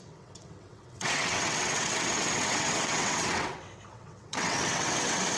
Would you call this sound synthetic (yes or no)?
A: yes